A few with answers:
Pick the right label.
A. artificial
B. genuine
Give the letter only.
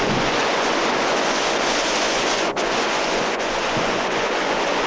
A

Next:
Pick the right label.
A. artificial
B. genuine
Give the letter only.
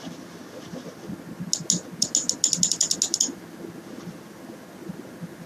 B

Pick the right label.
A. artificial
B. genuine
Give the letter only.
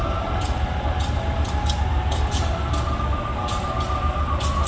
B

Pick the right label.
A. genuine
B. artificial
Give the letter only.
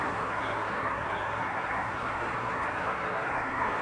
B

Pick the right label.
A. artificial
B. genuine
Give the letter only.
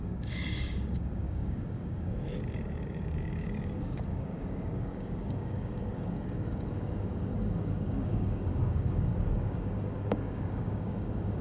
A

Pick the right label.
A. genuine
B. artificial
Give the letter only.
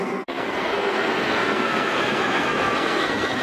B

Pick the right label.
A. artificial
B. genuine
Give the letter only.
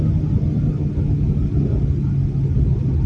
B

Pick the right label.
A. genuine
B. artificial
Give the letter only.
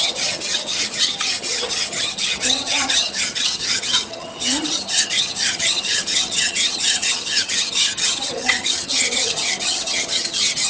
B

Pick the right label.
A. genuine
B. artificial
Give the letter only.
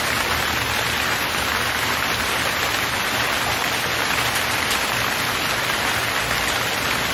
B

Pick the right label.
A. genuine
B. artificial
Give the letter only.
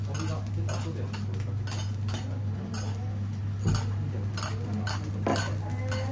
A